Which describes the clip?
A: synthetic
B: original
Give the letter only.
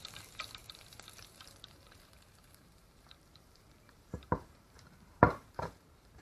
A